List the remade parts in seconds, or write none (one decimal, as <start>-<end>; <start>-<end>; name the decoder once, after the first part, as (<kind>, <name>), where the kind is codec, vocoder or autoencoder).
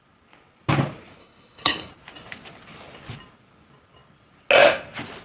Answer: 1.2-1.9 (codec, HILCodec)